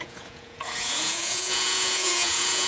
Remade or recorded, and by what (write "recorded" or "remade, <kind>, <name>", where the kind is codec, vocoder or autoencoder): remade, vocoder, Vocos